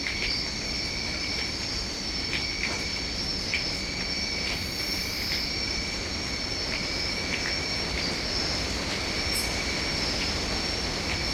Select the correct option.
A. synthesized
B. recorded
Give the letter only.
B